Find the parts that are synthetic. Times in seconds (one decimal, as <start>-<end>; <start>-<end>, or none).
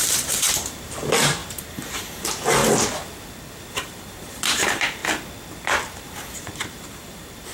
0.0-2.6; 3.7-5.0; 5.6-7.5